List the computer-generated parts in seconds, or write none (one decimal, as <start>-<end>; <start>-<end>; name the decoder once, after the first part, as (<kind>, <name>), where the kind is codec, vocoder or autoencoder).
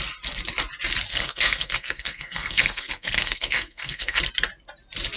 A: 1.1-4.2 (codec, SNAC)